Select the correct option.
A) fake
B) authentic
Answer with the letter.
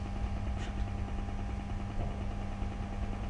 B